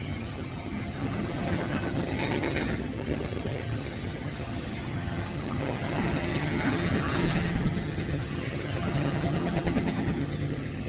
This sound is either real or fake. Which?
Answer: fake